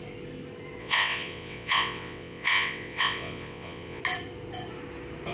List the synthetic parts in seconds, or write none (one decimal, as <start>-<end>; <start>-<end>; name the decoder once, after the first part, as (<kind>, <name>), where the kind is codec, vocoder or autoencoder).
0.8-4.0 (vocoder, WaveNeXt)